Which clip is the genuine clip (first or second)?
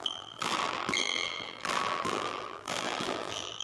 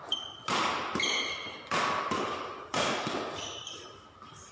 second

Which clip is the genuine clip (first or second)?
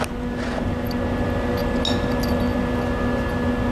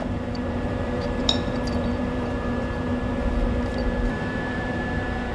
first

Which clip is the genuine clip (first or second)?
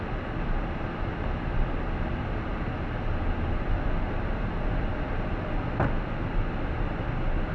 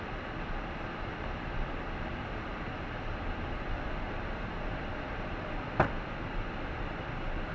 first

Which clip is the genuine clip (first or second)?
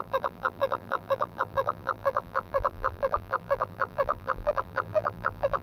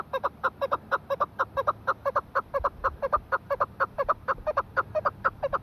second